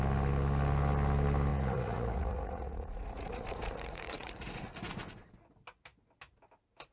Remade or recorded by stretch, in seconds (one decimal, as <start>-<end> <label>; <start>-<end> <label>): 0.0-1.5 recorded; 1.5-4.7 remade; 4.7-6.9 recorded